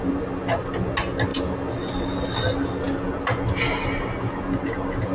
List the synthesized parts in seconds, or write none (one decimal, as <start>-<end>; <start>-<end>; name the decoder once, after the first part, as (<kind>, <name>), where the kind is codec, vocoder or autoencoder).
none